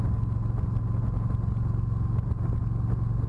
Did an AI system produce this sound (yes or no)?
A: no